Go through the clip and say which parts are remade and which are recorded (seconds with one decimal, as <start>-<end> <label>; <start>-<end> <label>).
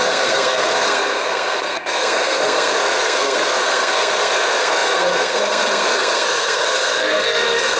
0.0-7.8 remade